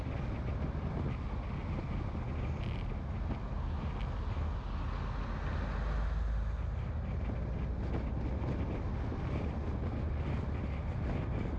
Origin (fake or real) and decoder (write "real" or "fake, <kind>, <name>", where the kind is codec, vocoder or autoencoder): real